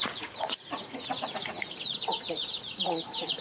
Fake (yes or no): yes